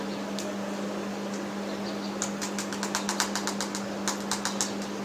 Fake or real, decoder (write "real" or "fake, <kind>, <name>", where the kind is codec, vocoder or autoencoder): real